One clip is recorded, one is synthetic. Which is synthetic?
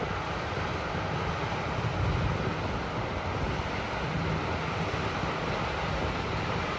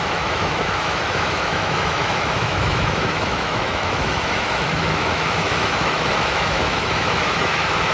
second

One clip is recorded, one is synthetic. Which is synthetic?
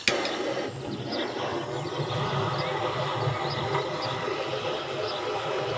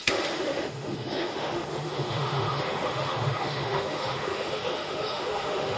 second